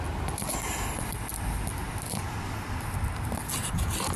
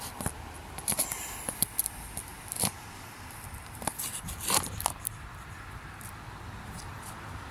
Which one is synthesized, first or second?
second